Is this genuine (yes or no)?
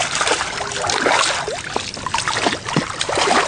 yes